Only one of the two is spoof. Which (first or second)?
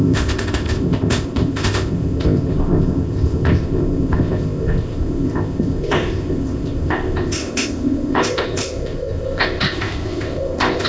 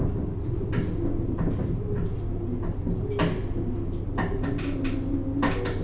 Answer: first